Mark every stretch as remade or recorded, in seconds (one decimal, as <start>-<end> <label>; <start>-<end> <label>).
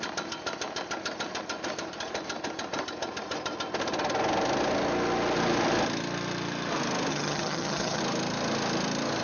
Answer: 0.0-7.1 recorded; 7.1-8.0 remade; 8.0-9.2 recorded